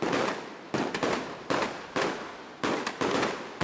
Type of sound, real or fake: real